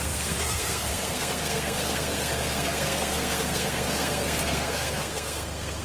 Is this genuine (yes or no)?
no